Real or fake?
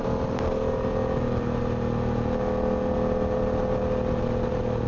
real